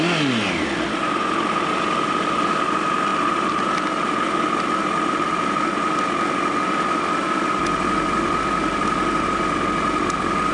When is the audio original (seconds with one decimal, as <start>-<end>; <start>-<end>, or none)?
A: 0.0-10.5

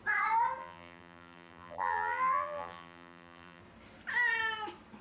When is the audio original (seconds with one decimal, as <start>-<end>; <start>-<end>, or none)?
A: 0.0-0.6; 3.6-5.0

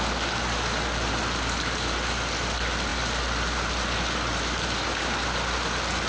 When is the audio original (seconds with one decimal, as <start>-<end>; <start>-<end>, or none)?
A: 0.0-6.1

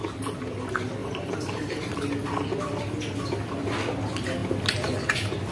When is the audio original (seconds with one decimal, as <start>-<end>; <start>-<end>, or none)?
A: 0.0-1.0; 1.9-5.5